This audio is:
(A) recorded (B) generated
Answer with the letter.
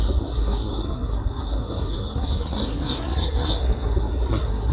B